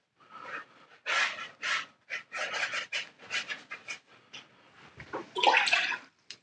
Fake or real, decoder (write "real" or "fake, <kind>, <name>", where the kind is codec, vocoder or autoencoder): real